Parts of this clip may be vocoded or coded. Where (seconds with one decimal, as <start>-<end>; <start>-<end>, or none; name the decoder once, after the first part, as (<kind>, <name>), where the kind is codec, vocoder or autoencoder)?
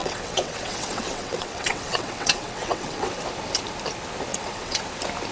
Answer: 0.0-3.2 (vocoder, WaveNeXt); 4.3-4.8